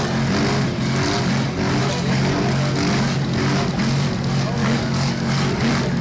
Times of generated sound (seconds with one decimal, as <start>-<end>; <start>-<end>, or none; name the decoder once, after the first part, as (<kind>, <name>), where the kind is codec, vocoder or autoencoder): 1.8-2.3 (codec, DAC); 4.6-5.3